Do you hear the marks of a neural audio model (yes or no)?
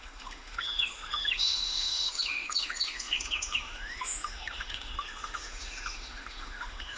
yes